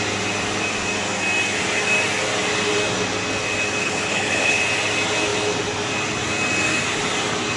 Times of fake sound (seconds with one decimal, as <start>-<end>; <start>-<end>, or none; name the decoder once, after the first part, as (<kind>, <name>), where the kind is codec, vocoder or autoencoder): 3.8-4.6 (codec, HILCodec)